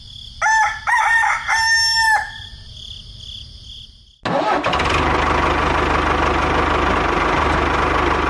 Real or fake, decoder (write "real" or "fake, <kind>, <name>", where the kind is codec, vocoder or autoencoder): real